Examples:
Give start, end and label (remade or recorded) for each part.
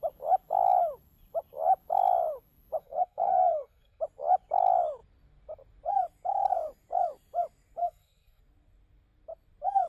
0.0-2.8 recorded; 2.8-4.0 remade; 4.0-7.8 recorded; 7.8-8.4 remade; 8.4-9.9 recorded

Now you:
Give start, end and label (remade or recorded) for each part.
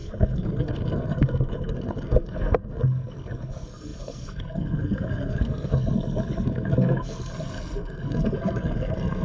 0.0-9.2 remade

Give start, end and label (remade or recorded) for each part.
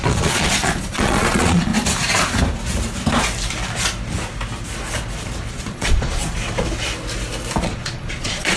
0.0-1.7 remade; 1.7-5.5 recorded; 5.5-6.2 remade; 6.2-7.6 recorded; 7.6-8.6 remade